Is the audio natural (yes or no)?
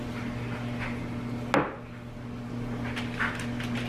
yes